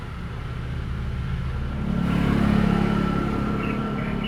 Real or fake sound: real